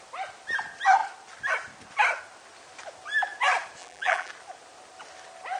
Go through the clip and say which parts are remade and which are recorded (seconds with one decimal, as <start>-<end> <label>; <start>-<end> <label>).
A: 0.0-3.8 recorded; 3.8-4.3 remade; 4.3-5.6 recorded